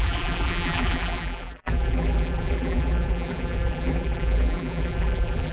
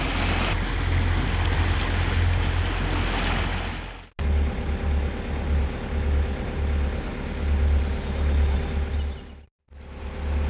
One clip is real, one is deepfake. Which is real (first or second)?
second